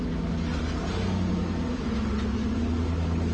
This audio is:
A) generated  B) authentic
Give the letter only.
B